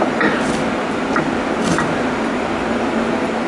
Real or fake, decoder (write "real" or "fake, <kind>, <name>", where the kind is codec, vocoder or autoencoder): real